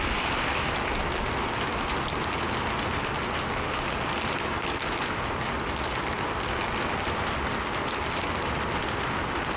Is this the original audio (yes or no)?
yes